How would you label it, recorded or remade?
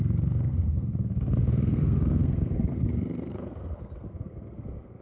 remade